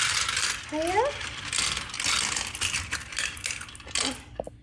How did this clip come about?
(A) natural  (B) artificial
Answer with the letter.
A